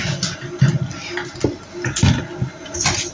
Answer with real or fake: real